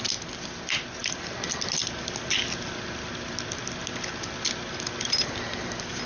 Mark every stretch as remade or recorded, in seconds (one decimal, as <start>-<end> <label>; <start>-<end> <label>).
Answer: 0.0-6.1 recorded